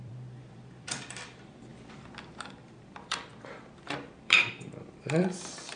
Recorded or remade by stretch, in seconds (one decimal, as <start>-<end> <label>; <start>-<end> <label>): 0.0-1.7 remade; 1.7-2.4 recorded; 2.4-5.8 remade